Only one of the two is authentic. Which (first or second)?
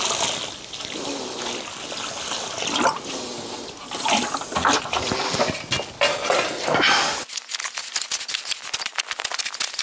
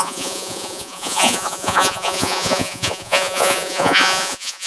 first